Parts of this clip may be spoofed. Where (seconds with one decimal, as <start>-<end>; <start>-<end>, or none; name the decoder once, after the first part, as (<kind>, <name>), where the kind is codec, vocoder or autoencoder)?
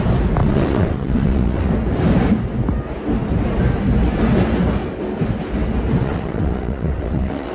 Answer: 0.4-1.7 (vocoder, WaveNeXt); 6.0-7.5